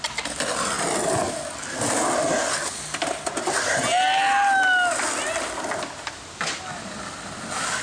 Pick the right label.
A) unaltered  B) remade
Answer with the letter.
A